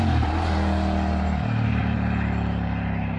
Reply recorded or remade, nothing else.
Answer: recorded